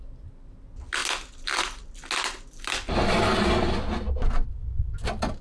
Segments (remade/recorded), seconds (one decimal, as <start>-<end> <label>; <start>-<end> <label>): 0.0-5.4 recorded